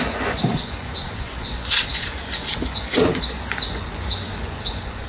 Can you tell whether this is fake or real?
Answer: fake